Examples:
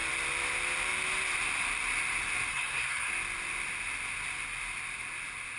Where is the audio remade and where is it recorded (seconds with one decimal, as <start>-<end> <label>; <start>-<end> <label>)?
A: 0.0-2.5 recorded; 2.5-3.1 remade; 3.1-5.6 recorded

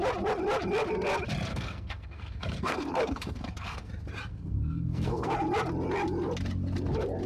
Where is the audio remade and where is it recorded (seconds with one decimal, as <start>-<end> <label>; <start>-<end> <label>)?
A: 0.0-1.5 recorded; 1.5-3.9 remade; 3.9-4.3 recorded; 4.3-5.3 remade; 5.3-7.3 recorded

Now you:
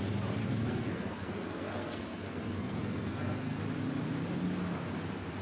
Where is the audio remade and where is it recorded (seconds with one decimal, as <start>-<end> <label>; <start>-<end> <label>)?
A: 0.0-0.4 recorded; 0.4-3.6 remade; 3.6-5.4 recorded